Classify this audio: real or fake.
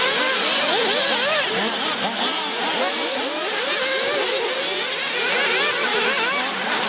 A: real